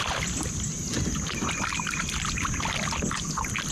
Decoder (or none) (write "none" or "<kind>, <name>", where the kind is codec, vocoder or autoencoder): none